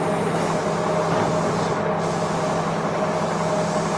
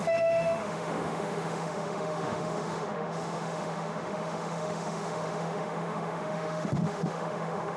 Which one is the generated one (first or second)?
second